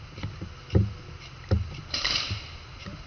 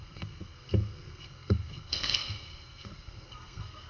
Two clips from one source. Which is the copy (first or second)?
second